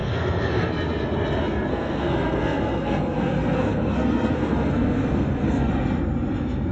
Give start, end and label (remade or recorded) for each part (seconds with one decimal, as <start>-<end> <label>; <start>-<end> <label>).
0.0-0.7 remade; 0.7-1.7 recorded; 1.7-5.7 remade; 5.7-6.7 recorded